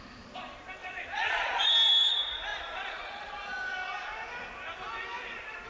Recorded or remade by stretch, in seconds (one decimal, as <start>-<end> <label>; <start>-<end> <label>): 0.0-0.8 recorded; 0.8-1.7 remade; 1.7-2.5 recorded; 2.5-3.3 remade; 3.3-5.7 recorded